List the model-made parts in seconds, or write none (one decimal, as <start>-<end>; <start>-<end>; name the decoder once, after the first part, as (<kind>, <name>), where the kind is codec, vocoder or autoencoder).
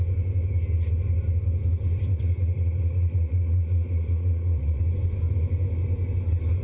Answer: 2.1-4.8 (vocoder, Vocos)